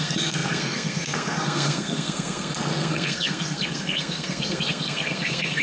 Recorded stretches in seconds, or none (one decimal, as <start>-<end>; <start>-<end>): none